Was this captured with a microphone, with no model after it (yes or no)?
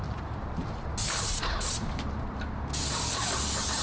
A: yes